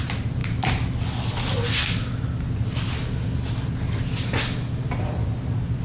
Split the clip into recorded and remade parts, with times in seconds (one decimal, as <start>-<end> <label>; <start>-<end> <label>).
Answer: 0.0-5.8 recorded